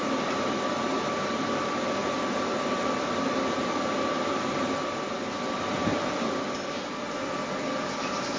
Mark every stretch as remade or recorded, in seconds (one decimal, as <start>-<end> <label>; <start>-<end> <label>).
0.0-8.4 recorded